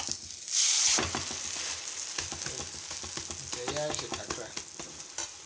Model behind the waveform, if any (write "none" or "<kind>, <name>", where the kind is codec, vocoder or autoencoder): none